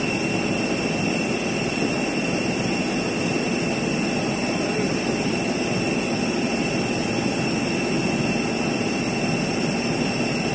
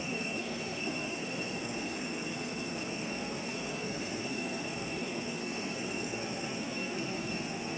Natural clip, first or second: first